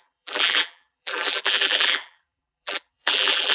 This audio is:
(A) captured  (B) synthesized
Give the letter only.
B